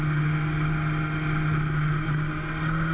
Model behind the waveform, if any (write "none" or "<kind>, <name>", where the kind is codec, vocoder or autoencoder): none